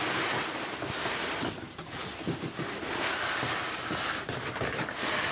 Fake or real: real